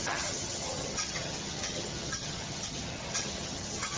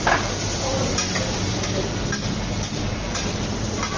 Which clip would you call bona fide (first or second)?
second